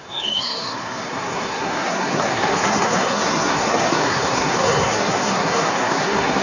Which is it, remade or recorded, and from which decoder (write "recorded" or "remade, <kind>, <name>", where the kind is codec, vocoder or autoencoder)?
remade, codec, SNAC